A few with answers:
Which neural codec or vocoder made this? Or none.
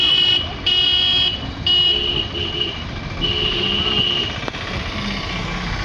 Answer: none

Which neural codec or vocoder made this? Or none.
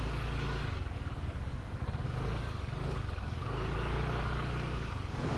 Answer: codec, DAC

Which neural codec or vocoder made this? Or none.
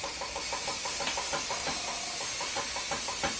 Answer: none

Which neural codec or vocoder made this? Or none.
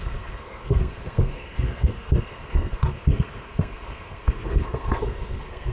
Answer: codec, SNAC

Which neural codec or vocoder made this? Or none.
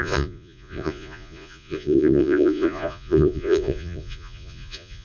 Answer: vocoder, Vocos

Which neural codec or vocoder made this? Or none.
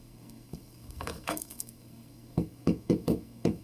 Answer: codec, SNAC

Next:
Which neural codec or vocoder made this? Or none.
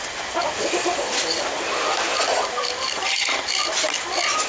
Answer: none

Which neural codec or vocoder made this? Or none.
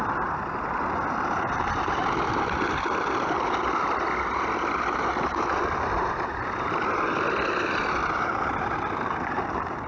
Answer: none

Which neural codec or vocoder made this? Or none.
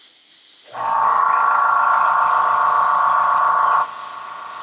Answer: vocoder, BigVGAN v2